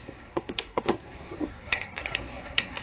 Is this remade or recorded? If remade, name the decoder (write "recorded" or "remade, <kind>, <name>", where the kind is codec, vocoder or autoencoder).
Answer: remade, codec, SNAC